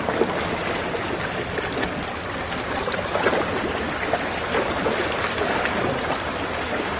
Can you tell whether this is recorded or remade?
recorded